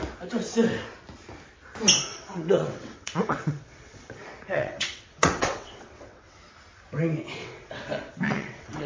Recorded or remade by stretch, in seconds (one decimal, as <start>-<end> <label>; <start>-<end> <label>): 0.0-2.1 recorded; 2.1-6.4 remade; 6.4-7.4 recorded; 7.4-8.9 remade